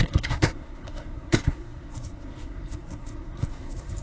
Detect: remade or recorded remade